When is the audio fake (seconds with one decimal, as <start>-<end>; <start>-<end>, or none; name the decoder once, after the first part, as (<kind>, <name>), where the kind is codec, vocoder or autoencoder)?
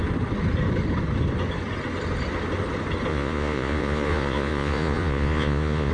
3.1-5.9 (vocoder, Vocos)